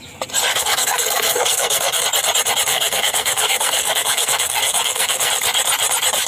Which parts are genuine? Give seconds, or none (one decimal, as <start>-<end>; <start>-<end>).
0.0-0.5; 2.0-2.7; 5.3-6.3